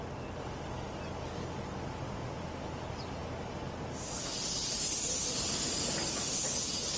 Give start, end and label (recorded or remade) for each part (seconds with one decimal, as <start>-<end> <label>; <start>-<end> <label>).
0.0-7.0 recorded